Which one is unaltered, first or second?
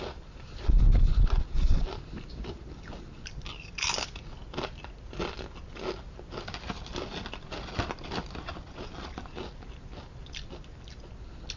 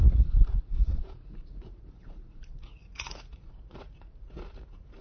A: first